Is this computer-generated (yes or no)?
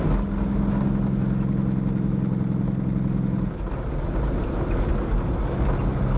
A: no